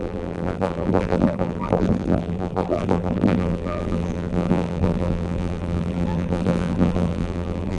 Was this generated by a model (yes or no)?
yes